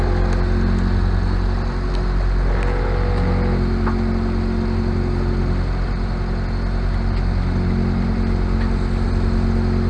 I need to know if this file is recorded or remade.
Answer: recorded